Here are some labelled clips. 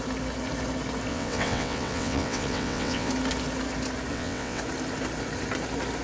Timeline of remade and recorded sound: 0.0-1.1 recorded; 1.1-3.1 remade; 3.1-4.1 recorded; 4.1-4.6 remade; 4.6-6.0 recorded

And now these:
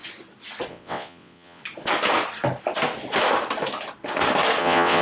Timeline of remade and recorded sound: 0.0-0.7 recorded; 0.7-1.6 remade; 1.6-4.6 recorded; 4.6-5.0 remade

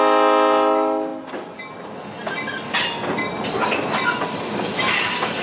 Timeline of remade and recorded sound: 0.0-5.4 recorded

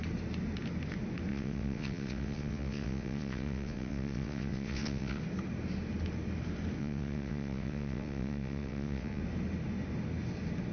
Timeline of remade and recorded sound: 0.0-1.3 recorded; 1.3-5.2 remade; 5.2-6.8 recorded; 6.8-9.2 remade; 9.2-10.7 recorded

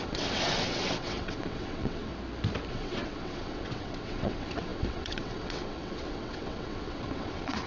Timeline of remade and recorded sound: 0.0-2.1 remade; 2.1-2.7 recorded; 2.7-7.7 remade

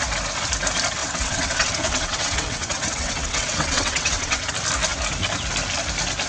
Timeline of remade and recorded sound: 0.0-1.0 recorded; 1.0-4.5 remade; 4.5-6.3 recorded

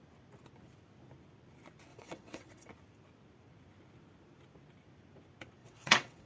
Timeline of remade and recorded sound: 0.0-1.9 recorded; 1.9-2.7 remade; 2.7-5.6 recorded; 5.6-6.3 remade